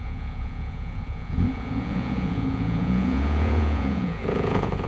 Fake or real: fake